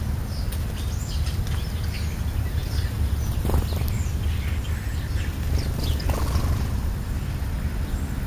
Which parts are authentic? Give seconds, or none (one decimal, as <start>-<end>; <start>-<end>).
0.0-8.3

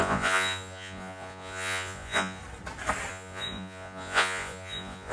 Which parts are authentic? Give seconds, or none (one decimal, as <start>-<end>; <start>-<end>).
2.4-3.1

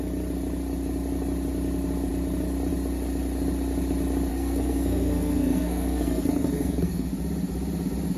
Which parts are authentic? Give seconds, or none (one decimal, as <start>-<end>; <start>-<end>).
0.0-4.3; 7.1-8.2

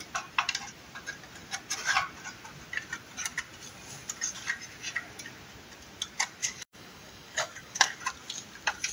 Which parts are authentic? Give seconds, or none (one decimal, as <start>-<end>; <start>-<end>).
0.0-6.4; 8.0-8.9

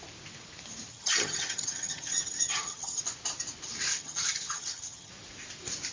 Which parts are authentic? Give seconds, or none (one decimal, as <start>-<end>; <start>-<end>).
0.0-0.9; 3.0-3.9; 5.1-5.9

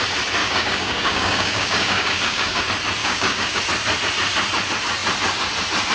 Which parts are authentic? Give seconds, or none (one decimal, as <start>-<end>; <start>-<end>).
0.0-0.4; 2.6-3.0; 3.6-5.9